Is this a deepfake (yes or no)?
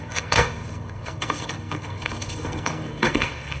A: yes